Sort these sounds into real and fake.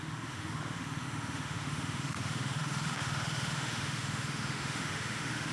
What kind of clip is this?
fake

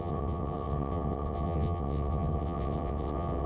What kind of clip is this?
fake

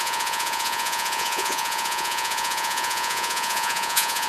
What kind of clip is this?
fake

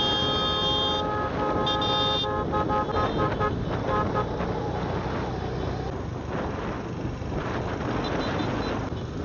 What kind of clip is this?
real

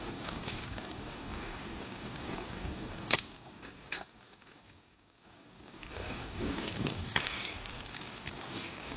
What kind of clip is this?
fake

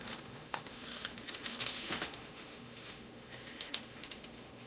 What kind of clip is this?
fake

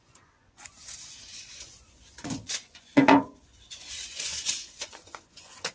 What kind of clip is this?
fake